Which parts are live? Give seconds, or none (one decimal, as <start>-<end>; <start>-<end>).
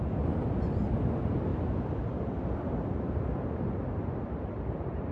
0.0-1.5; 3.2-5.1